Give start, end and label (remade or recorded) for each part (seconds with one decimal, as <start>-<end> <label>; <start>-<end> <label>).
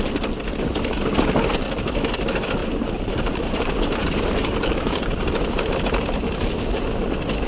0.0-2.6 recorded; 2.6-3.7 remade; 3.7-4.4 recorded; 4.4-5.6 remade; 5.6-7.5 recorded